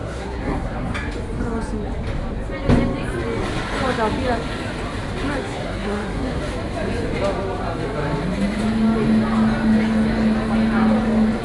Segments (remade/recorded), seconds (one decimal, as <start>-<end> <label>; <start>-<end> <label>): 0.0-0.9 remade; 0.9-5.4 recorded; 5.4-6.4 remade; 6.4-11.4 recorded